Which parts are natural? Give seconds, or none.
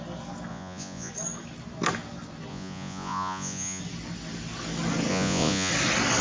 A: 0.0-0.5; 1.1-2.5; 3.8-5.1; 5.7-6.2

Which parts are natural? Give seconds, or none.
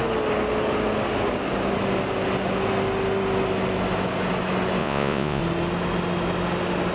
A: 0.0-4.8; 5.4-6.9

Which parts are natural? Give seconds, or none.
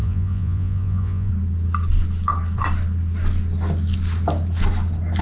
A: 1.3-5.2